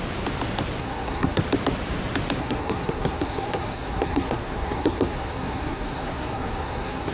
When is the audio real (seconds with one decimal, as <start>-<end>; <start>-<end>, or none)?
0.0-0.8; 1.4-2.4